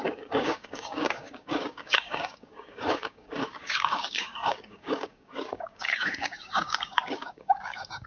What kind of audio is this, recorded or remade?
remade